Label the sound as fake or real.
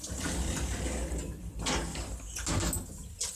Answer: real